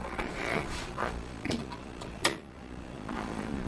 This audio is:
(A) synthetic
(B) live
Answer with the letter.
A